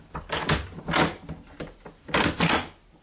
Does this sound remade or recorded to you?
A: recorded